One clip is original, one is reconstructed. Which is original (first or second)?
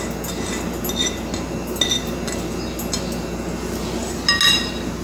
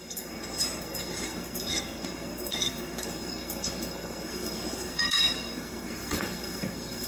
first